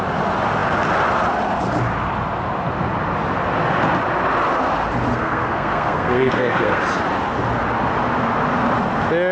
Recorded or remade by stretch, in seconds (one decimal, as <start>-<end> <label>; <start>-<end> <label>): 0.0-5.1 recorded; 5.1-6.8 remade; 6.8-9.3 recorded